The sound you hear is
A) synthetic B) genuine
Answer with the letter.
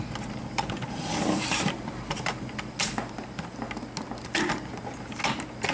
B